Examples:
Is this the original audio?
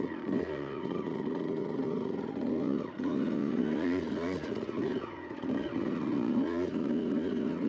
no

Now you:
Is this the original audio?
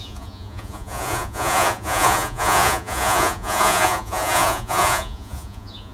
no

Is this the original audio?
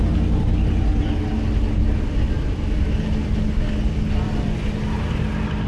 yes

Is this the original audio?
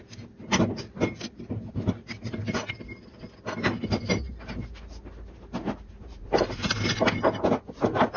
yes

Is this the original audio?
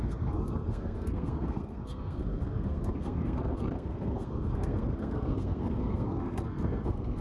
no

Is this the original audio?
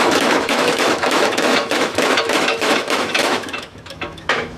no